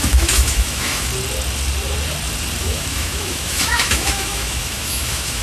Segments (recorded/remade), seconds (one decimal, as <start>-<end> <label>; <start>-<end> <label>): 0.0-1.1 remade; 1.1-2.6 recorded; 2.6-5.4 remade